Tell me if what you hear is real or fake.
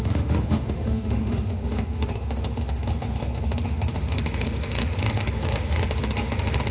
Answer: fake